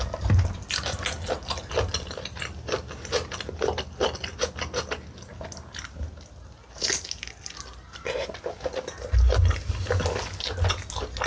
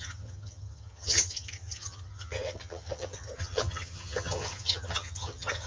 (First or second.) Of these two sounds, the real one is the first